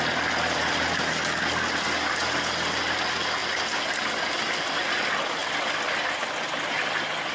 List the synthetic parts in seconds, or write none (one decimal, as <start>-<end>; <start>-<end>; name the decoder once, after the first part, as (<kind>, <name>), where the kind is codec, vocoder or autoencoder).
none